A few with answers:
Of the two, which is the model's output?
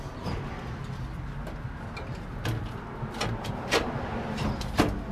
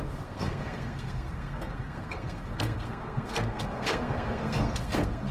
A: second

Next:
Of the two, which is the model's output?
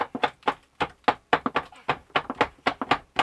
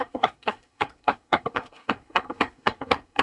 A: second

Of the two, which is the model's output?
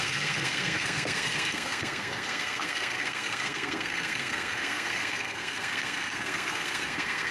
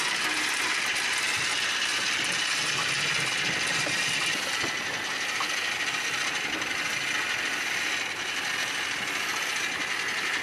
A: first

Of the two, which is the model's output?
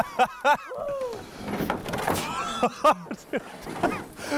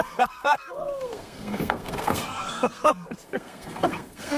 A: second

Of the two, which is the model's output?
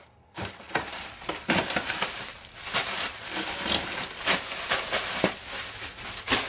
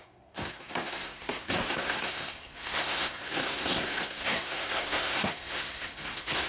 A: second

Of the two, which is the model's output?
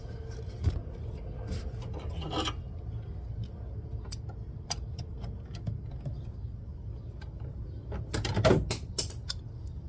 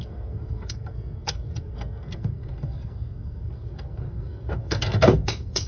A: second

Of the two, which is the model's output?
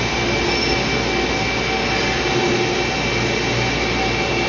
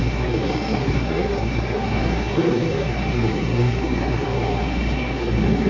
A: second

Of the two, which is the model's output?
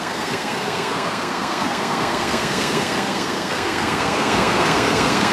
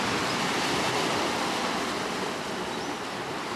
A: first